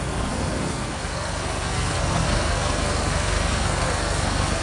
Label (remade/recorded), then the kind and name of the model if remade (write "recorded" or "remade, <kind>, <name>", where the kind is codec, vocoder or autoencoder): remade, codec, SNAC